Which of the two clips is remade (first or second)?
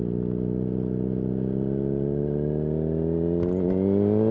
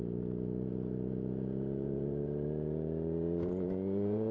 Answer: second